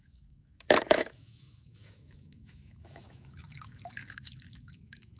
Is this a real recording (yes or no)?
no